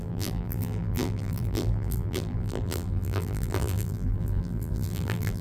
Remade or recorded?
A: remade